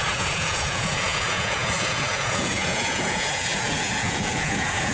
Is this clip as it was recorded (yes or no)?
no